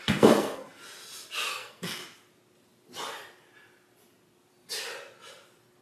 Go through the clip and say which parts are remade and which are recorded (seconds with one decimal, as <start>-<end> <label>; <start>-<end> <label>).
0.0-0.8 remade; 0.8-1.5 recorded; 1.5-2.0 remade; 2.0-5.8 recorded